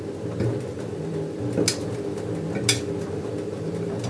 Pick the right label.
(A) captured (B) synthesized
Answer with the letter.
A